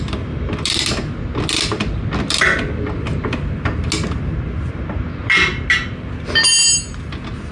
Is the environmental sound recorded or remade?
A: recorded